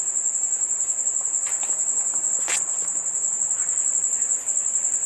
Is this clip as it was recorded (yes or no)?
yes